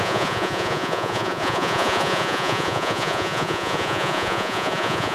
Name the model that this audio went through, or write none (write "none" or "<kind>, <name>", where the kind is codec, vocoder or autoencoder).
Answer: vocoder, Vocos